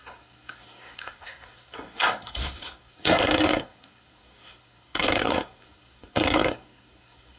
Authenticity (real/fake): fake